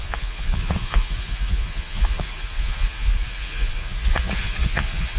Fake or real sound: fake